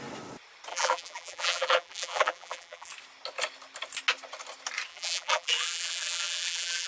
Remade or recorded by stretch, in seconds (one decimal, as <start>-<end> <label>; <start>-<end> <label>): 0.0-0.7 recorded; 0.7-2.9 remade; 2.9-4.9 recorded; 4.9-6.9 remade